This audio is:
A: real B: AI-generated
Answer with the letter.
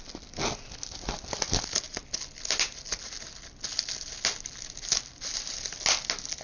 A